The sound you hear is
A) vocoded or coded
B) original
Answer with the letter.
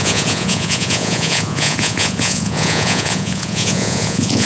A